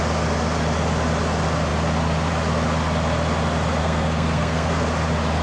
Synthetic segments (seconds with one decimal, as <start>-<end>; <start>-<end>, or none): 3.8-4.7